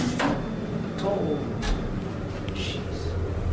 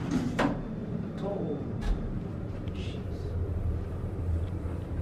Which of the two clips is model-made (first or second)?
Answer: second